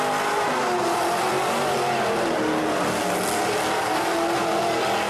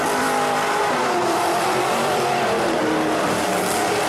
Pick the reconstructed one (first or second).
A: second